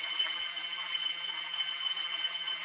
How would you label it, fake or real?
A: fake